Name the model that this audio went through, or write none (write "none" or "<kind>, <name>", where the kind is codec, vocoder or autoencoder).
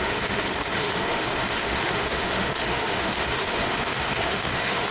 autoencoder, DAC-VAE